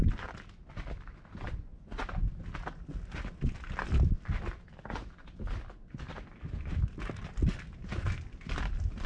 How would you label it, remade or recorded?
recorded